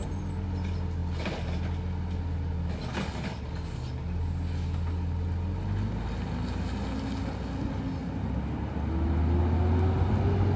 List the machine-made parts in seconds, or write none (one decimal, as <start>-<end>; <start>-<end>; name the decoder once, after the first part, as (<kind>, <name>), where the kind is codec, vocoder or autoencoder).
none